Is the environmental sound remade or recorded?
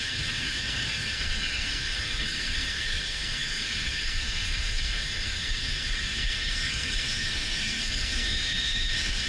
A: remade